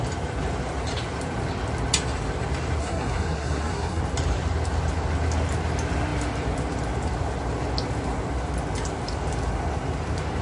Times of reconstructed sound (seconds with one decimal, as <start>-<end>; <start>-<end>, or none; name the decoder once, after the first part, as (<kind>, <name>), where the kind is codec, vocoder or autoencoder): 2.8-4.0 (codec, SNAC)